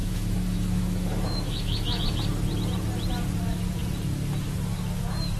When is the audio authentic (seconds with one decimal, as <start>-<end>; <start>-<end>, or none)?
2.0-5.4